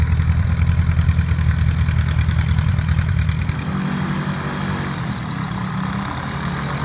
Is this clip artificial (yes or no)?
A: no